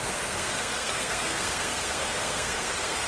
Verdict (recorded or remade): remade